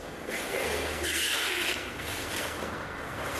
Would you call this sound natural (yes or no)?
no